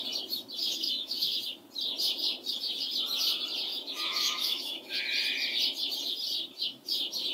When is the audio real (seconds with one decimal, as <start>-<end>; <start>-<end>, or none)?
0.0-0.6; 1.4-3.7; 5.0-7.3